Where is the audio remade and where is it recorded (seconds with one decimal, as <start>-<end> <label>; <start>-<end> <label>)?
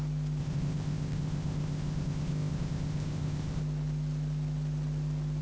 0.0-0.4 recorded; 0.4-3.6 remade; 3.6-5.4 recorded